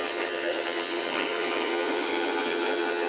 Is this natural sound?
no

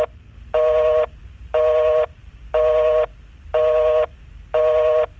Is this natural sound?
yes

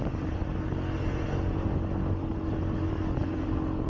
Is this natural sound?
yes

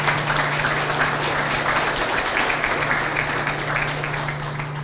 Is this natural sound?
yes